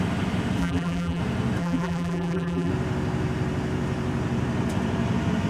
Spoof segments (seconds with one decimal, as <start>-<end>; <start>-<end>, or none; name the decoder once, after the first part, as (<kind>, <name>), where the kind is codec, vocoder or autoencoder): 0.6-1.2 (vocoder, BigVGAN v2); 1.6-2.7